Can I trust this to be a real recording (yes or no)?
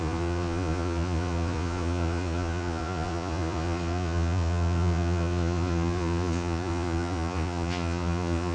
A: no